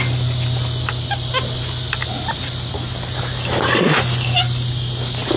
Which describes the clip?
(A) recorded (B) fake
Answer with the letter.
A